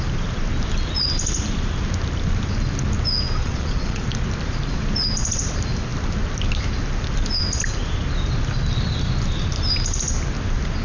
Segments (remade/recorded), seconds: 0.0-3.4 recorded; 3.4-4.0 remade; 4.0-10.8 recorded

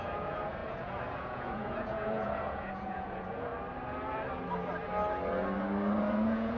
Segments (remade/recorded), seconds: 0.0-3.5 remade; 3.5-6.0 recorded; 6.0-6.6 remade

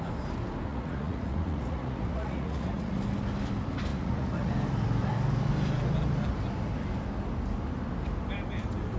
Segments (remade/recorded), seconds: 0.0-0.7 recorded; 0.7-3.0 remade; 3.0-3.9 recorded; 3.9-4.5 remade; 4.5-9.0 recorded